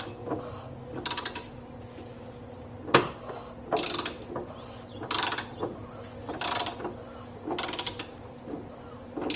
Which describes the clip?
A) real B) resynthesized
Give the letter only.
A